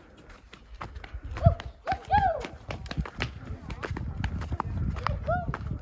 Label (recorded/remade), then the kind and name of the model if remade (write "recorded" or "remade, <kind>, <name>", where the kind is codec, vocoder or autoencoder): recorded